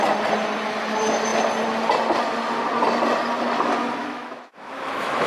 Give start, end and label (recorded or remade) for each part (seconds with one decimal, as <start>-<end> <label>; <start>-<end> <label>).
0.0-4.0 recorded; 4.0-5.3 remade